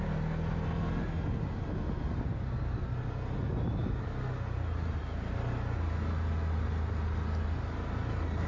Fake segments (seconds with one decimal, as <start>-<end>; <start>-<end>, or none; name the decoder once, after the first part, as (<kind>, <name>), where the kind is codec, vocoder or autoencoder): none